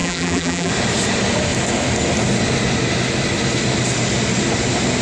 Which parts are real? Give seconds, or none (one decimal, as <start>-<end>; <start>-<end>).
0.7-5.0